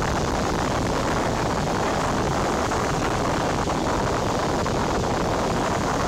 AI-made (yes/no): no